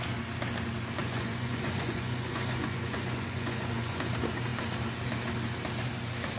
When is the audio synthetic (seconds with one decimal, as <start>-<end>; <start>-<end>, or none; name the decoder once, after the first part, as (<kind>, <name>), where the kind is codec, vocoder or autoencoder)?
1.0-4.1 (vocoder, Vocos)